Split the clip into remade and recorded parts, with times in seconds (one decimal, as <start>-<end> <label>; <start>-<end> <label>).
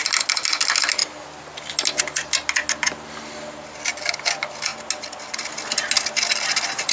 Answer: 0.0-6.9 recorded